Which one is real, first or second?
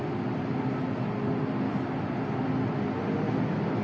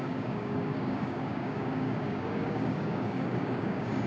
first